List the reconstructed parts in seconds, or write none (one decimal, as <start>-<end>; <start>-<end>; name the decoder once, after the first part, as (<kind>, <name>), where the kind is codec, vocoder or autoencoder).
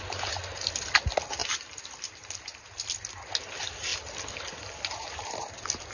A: none